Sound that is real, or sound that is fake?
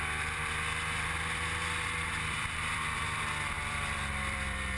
fake